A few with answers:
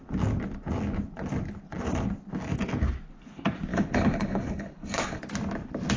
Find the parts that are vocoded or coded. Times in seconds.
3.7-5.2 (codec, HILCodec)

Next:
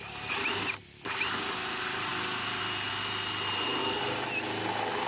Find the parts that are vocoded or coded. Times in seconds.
none

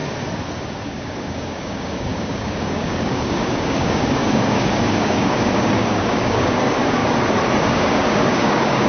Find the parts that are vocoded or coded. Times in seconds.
0.6-7.0 (codec, DAC); 7.6-8.9

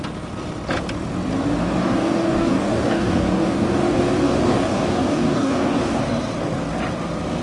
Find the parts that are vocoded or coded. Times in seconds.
1.8-6.0 (codec, DAC)

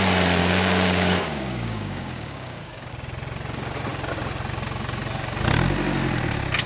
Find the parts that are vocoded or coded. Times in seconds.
0.4-2.9 (codec, DAC)